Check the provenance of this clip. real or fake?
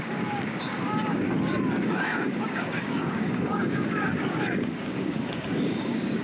fake